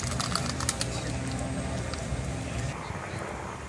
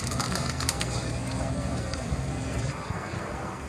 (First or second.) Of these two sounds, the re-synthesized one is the second